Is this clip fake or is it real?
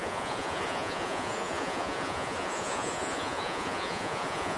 fake